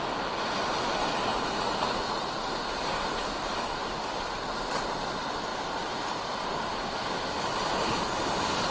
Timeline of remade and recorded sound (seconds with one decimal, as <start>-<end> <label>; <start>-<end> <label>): 0.0-1.3 recorded; 1.3-2.4 remade; 2.4-8.7 recorded